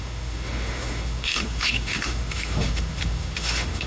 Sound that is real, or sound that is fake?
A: fake